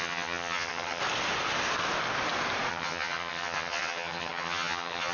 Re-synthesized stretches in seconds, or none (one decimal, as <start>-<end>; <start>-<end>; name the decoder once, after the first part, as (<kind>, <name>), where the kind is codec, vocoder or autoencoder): 0.0-1.0 (vocoder, HiFi-GAN); 2.7-5.1